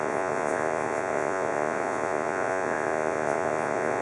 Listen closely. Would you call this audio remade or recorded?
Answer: remade